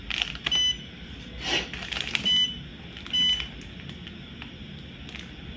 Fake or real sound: real